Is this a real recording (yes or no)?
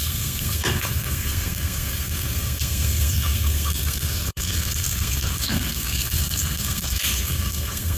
no